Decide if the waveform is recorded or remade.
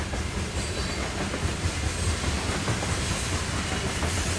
recorded